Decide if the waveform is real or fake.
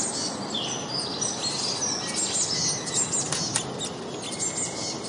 real